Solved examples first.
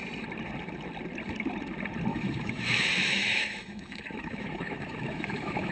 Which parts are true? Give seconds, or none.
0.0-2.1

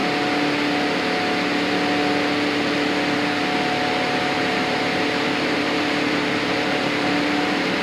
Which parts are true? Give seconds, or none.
0.0-4.2